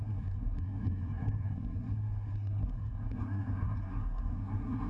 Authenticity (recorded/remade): remade